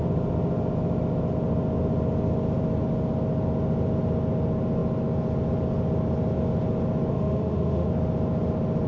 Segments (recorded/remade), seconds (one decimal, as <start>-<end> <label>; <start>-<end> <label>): 0.0-7.1 recorded; 7.1-7.9 remade; 7.9-8.9 recorded